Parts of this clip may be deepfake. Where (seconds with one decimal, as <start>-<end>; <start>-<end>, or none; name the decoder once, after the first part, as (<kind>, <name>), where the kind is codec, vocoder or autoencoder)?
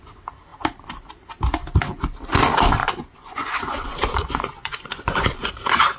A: 2.8-5.5 (vocoder, Vocos)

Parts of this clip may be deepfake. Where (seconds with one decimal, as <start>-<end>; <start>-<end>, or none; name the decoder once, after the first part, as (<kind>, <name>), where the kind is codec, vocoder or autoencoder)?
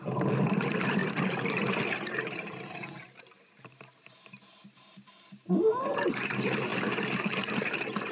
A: 0.0-1.0 (vocoder, BigVGAN v2); 1.8-8.1